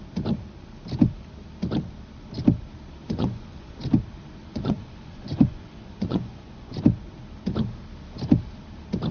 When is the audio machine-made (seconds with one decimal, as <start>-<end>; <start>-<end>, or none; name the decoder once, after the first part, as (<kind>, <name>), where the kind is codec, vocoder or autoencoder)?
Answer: 3.0-3.8 (vocoder, Vocos); 4.4-6.8

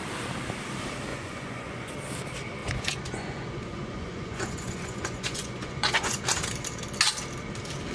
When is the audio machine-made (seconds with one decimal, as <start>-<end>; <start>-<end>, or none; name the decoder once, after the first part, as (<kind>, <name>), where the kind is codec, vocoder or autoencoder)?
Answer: 1.1-1.9 (vocoder, Vocos); 2.6-6.2

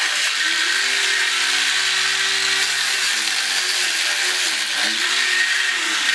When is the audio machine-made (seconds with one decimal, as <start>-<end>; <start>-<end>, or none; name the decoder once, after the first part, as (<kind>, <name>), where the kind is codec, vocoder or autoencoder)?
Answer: none